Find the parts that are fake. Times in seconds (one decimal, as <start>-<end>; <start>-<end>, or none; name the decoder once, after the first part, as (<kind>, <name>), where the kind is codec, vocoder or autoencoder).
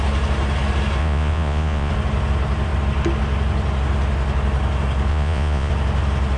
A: 1.0-1.9 (vocoder, Vocos); 5.1-5.7